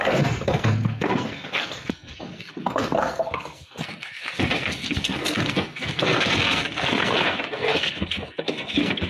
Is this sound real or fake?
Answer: fake